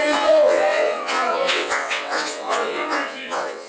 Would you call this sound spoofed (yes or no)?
yes